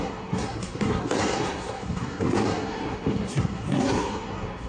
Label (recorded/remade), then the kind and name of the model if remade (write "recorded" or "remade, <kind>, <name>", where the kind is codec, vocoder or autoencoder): remade, codec, SNAC